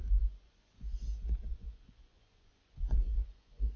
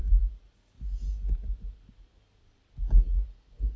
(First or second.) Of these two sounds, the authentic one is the second